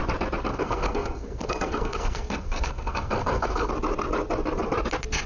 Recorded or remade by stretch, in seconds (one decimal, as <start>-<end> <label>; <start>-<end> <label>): 0.0-0.5 recorded; 0.5-3.7 remade; 3.7-5.3 recorded